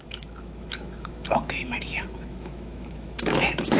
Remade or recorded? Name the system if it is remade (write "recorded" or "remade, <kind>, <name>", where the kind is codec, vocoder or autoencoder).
remade, autoencoder, DAC-VAE